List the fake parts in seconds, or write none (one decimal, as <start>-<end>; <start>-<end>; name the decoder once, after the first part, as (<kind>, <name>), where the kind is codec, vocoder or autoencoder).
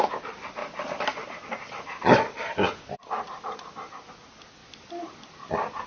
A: none